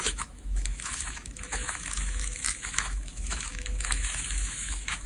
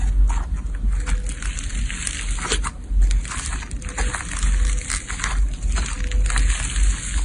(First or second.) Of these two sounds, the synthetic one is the first